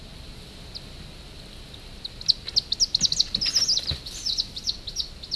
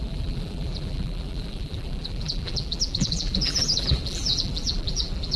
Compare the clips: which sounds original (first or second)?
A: first